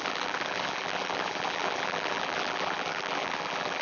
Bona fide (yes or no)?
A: no